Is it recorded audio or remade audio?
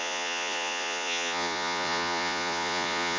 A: remade